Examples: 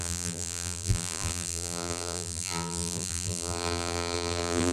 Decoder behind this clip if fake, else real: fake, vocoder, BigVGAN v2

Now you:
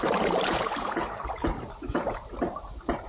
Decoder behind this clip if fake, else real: fake, vocoder, BigVGAN v2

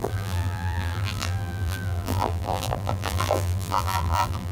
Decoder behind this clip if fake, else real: fake, vocoder, BigVGAN v2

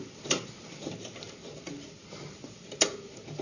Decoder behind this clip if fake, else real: real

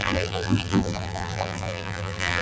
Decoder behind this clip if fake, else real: fake, vocoder, BigVGAN v2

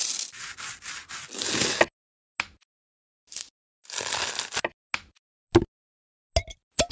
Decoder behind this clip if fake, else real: real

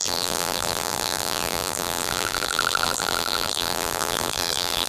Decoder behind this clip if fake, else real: fake, vocoder, BigVGAN v2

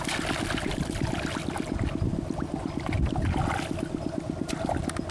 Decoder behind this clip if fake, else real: real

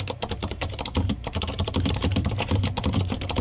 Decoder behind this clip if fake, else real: fake, vocoder, BigVGAN v2